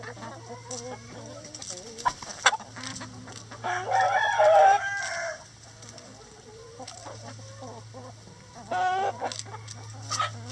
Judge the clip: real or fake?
real